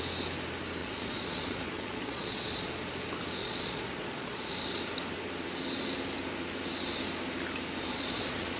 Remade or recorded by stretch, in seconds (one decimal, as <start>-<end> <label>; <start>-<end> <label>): 0.0-0.8 recorded; 0.8-2.7 remade; 2.7-3.4 recorded; 3.4-4.5 remade; 4.5-7.9 recorded; 7.9-8.6 remade

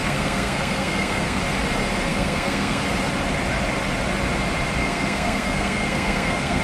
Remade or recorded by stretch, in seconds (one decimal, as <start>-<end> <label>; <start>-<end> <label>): 0.0-1.4 remade; 1.4-2.1 recorded; 2.1-2.8 remade; 2.8-4.8 recorded; 4.8-6.6 remade

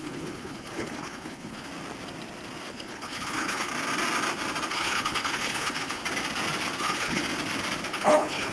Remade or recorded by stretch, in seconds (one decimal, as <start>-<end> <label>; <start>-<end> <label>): 0.0-1.7 remade; 1.7-2.7 recorded; 2.7-3.7 remade; 3.7-4.7 recorded; 4.7-6.0 remade; 6.0-6.8 recorded; 6.8-7.2 remade; 7.2-7.9 recorded; 7.9-8.5 remade